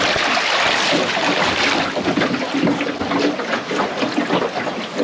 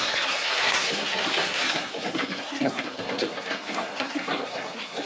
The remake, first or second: second